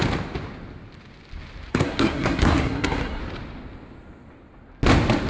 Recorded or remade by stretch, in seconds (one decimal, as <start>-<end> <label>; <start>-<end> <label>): 0.0-1.7 recorded; 1.7-3.2 remade; 3.2-5.3 recorded